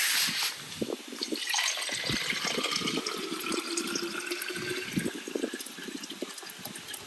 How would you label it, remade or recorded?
recorded